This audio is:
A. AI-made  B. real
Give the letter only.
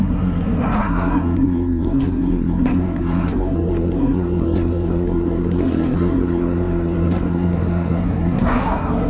A